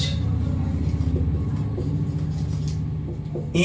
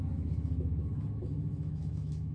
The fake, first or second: second